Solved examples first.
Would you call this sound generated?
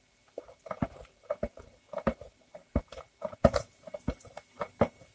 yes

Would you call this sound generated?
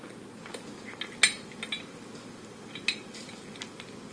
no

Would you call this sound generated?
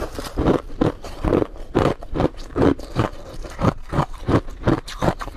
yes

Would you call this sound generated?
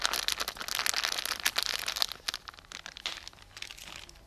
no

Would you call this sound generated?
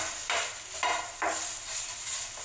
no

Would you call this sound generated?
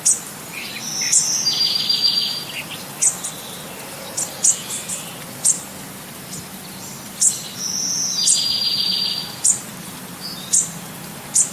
no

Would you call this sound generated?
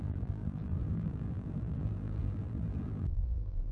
yes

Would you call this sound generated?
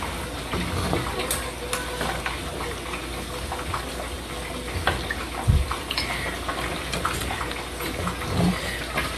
no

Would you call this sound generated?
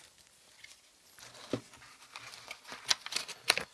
no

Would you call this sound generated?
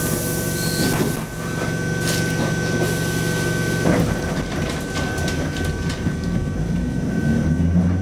no